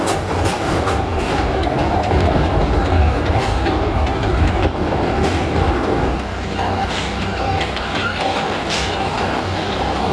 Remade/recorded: remade